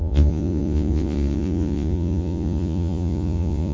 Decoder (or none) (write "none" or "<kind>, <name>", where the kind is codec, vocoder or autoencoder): vocoder, Vocos